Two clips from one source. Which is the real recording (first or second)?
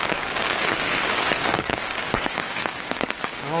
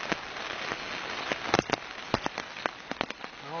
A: second